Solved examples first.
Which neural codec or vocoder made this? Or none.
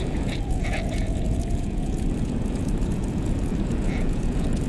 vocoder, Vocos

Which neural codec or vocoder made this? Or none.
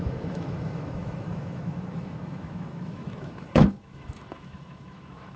autoencoder, DAC-VAE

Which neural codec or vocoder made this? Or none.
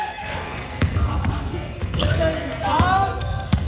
codec, SNAC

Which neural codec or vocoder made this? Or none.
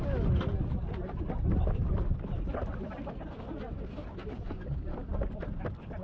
none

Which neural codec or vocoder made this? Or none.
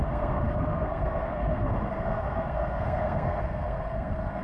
codec, SNAC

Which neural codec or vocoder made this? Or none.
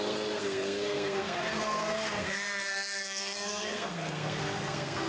codec, SNAC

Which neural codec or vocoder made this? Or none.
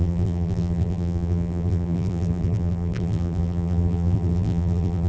vocoder, BigVGAN v2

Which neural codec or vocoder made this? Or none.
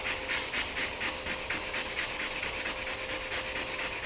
none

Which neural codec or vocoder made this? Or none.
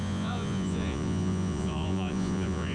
vocoder, Vocos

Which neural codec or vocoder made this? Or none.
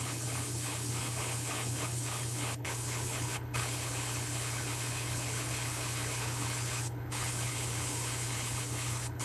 codec, HILCodec